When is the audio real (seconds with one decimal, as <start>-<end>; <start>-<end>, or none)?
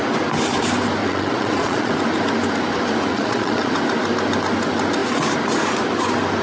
0.0-1.0; 1.9-3.1; 3.7-6.4